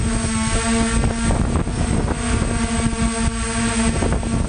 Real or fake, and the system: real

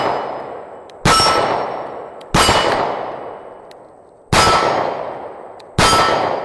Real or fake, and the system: real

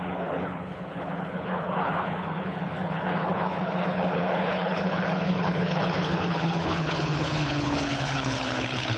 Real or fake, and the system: fake, codec, HILCodec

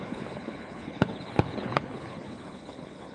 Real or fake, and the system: fake, codec, HILCodec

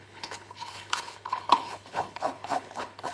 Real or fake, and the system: fake, codec, HILCodec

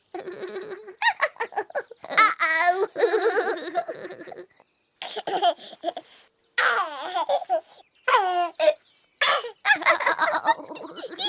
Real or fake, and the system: real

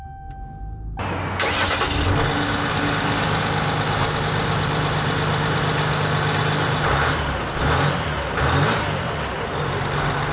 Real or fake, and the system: real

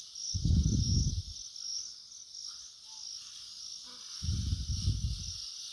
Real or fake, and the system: real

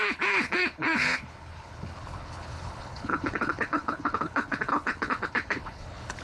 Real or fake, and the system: fake, codec, HILCodec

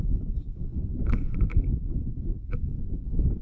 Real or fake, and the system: fake, codec, HILCodec